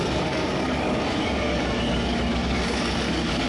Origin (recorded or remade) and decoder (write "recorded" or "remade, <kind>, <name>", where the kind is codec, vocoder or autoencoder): remade, codec, DAC